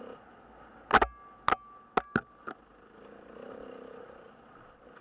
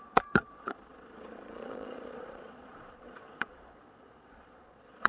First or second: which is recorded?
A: first